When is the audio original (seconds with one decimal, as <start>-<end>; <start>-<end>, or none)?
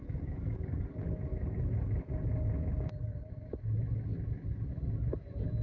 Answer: 0.8-5.6